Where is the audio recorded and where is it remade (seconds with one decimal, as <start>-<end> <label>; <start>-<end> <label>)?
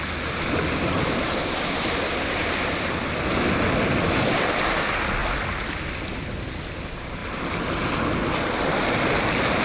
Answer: 0.0-9.6 recorded